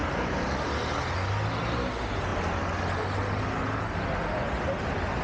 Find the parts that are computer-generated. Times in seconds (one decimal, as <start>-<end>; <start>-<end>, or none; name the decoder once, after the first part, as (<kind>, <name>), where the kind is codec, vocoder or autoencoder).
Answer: 0.0-0.7 (vocoder, BigVGAN v2)